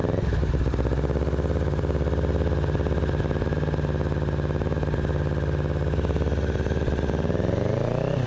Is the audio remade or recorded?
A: recorded